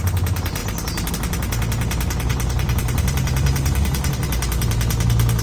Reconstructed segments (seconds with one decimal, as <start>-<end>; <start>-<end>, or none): 0.6-1.1; 2.3-4.1